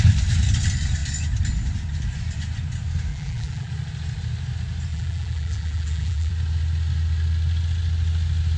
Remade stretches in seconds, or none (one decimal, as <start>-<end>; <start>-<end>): 3.1-3.7; 4.9-6.3